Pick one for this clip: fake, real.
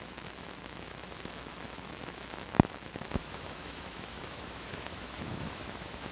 fake